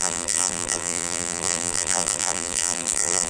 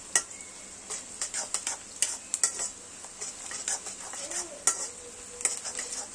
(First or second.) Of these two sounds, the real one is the second